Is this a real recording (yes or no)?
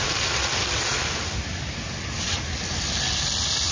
yes